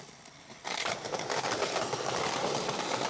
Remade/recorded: remade